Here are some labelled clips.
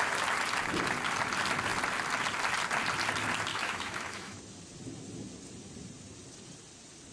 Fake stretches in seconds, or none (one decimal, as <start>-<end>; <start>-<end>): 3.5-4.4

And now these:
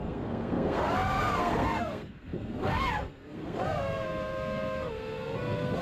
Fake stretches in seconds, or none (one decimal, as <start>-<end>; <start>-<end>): 0.0-5.8

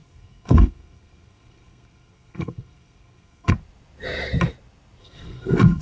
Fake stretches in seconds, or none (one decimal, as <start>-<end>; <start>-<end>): 0.0-3.5; 5.0-5.8